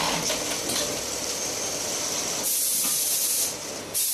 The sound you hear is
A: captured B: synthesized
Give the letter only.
A